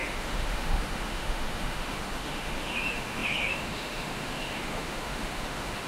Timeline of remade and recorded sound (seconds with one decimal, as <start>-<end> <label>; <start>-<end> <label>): 0.0-5.9 remade